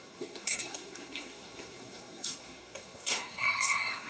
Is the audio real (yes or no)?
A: no